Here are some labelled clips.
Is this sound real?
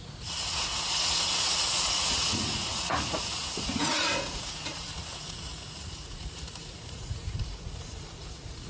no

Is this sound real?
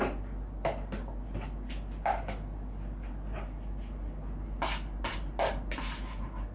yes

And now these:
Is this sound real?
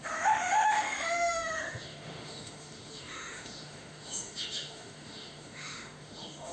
no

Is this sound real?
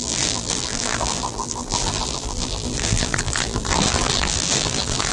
no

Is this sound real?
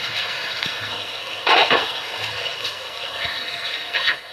no